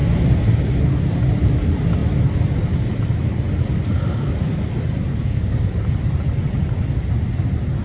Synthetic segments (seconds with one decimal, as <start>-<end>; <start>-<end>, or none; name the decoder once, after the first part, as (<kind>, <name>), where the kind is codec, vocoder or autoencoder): 5.1-5.7 (codec, DAC)